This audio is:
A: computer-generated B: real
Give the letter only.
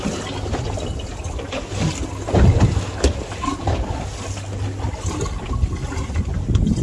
B